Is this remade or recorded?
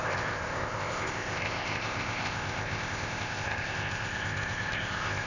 remade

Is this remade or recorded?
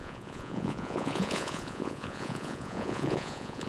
remade